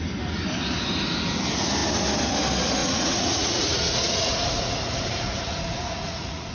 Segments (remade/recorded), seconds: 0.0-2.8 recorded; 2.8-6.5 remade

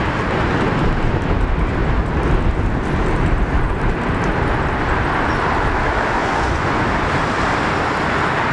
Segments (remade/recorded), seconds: 0.0-6.2 recorded; 6.2-6.8 remade; 6.8-8.5 recorded

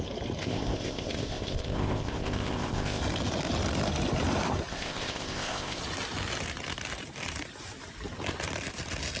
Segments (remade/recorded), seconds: 0.0-0.4 recorded; 0.4-3.0 remade; 3.0-4.7 recorded; 4.7-5.8 remade; 5.8-9.2 recorded

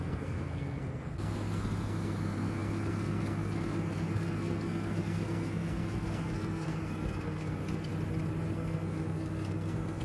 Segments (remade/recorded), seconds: 0.0-7.9 remade; 7.9-8.5 recorded; 8.5-10.0 remade

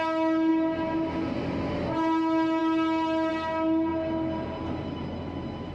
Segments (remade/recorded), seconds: 0.0-5.7 recorded

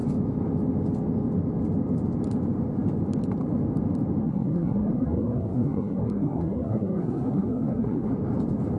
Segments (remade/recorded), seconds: 0.0-4.2 recorded; 4.2-8.1 remade; 8.1-8.8 recorded

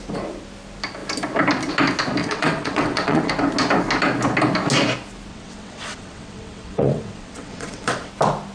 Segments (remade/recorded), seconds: 0.0-2.2 recorded; 2.2-3.3 remade; 3.3-5.3 recorded; 5.3-8.1 remade; 8.1-8.5 recorded

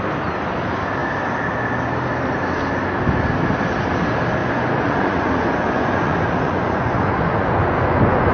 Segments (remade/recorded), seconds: 0.0-4.4 recorded; 4.4-8.3 remade